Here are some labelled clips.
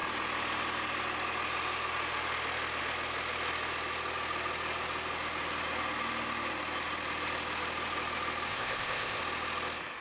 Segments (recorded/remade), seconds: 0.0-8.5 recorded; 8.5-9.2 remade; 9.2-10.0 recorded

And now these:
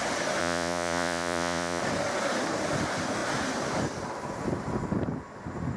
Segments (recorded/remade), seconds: 0.0-0.4 recorded; 0.4-1.8 remade; 1.8-5.8 recorded

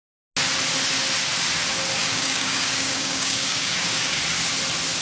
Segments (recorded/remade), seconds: 0.0-2.0 recorded; 2.0-4.2 remade; 4.2-5.0 recorded

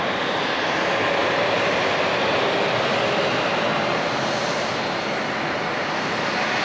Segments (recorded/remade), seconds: 0.0-1.2 recorded; 1.2-1.9 remade; 1.9-3.9 recorded; 3.9-4.8 remade; 4.8-6.6 recorded